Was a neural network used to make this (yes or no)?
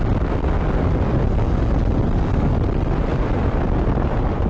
no